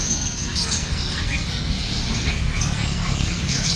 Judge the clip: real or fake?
fake